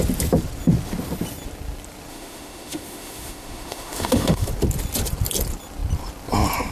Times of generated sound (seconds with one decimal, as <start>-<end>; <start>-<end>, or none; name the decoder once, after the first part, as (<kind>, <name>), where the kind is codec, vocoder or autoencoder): 2.1-4.5 (autoencoder, DAC-VAE)